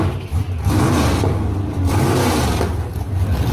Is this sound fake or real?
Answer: real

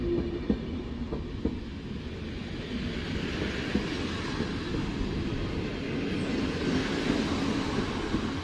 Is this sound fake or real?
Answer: real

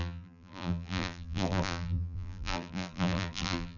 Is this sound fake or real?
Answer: fake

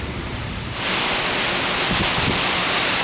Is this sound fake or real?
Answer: real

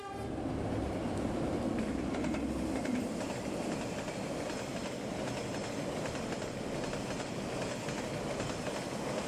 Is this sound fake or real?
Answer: real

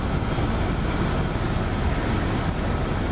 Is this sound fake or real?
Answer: real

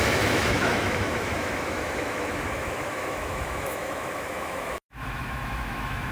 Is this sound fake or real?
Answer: fake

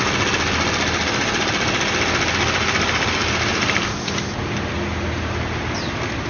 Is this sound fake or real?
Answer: real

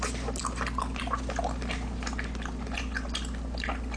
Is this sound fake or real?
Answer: real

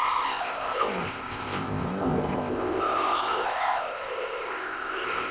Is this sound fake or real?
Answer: fake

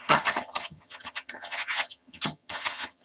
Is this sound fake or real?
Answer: fake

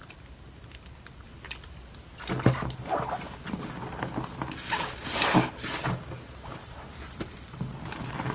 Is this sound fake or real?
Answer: real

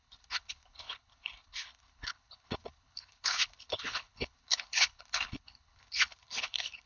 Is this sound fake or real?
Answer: fake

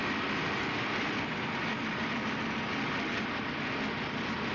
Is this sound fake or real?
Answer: real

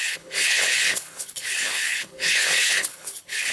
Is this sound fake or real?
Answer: fake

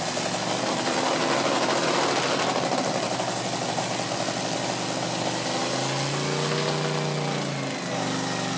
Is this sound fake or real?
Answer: real